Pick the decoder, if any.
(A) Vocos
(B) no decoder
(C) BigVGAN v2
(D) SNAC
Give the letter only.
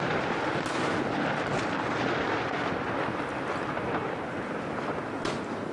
B